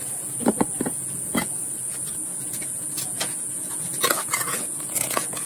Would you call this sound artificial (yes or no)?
yes